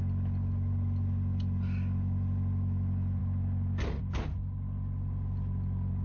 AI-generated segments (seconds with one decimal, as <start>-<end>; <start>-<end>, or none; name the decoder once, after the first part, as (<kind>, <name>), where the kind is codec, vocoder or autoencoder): none